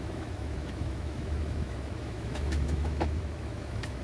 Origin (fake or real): fake